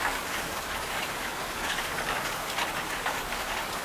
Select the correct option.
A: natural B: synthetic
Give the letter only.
B